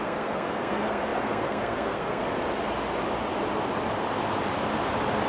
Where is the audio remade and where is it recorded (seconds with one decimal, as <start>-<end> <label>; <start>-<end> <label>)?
0.0-2.2 remade; 2.2-5.3 recorded